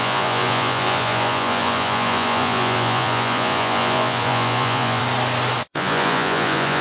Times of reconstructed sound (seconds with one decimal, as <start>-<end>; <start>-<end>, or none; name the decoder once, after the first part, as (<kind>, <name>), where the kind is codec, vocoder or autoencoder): 0.0-5.0 (vocoder, Vocos); 5.6-6.8